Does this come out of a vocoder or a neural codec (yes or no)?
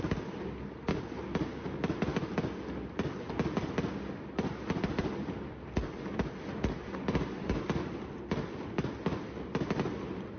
no